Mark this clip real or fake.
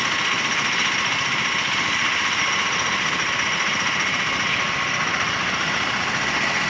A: real